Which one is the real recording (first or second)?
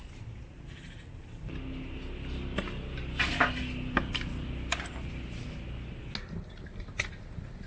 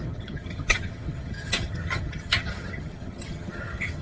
first